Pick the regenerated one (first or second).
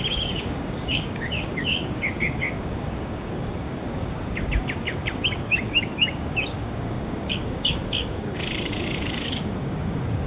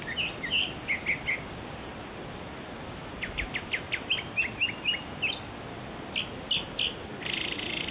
first